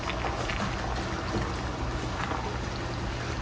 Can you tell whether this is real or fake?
real